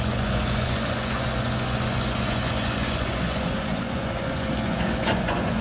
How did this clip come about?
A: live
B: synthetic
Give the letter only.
B